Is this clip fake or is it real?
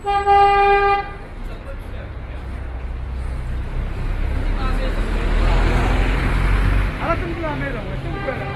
real